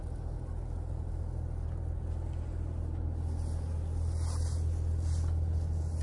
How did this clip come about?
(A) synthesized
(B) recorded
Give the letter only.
B